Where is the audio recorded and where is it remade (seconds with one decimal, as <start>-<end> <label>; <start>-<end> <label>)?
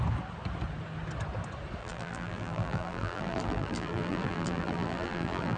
0.0-1.8 recorded; 1.8-5.6 remade